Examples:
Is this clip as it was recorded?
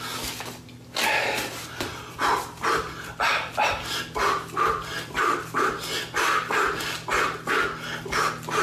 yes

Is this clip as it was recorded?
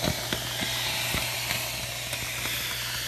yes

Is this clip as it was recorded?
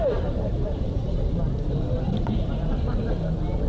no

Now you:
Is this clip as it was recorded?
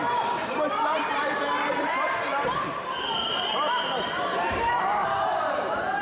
no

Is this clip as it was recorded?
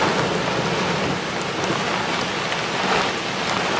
yes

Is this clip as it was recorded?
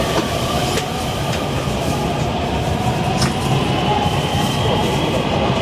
no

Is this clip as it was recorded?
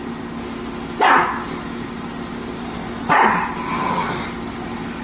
yes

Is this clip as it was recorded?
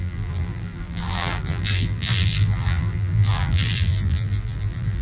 no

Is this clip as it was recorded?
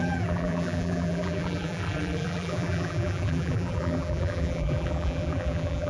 no